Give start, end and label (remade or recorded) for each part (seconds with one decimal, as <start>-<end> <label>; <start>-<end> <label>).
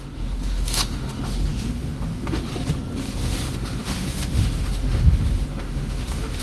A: 0.0-2.5 remade; 2.5-3.0 recorded; 3.0-6.4 remade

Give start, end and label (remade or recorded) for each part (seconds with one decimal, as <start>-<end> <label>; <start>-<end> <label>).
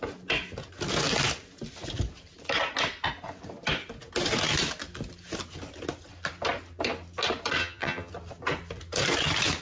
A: 0.0-7.6 recorded; 7.6-8.1 remade; 8.1-9.6 recorded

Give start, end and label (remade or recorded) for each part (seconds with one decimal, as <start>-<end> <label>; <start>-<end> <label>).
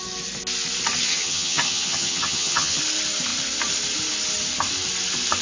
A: 0.0-1.1 recorded; 1.1-2.8 remade; 2.8-5.4 recorded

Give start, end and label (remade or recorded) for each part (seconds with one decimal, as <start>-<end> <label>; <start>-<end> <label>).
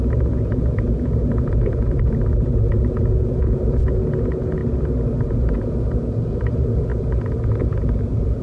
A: 0.0-4.6 remade; 4.6-5.2 recorded; 5.2-8.4 remade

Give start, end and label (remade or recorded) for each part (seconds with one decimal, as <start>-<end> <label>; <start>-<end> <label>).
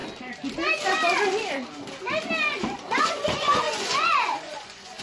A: 0.0-3.0 recorded; 3.0-5.0 remade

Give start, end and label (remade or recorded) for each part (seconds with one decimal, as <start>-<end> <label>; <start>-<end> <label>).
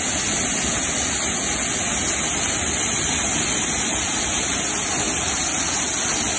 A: 0.0-6.4 recorded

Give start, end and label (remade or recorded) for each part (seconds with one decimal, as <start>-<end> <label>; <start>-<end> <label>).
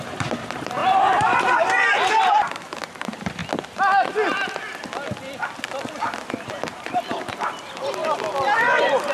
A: 0.0-3.4 remade; 3.4-6.3 recorded; 6.3-8.0 remade; 8.0-8.6 recorded; 8.6-9.1 remade